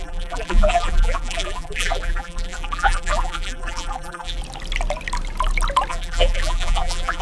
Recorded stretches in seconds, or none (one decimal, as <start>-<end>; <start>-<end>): 4.4-5.9